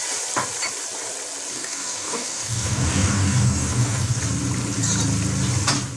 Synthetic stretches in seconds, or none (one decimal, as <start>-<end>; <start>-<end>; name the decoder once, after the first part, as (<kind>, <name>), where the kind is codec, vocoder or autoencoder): 1.5-4.2 (codec, DAC)